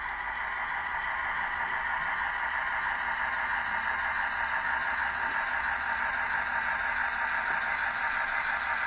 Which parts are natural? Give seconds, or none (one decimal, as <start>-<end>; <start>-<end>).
0.0-8.9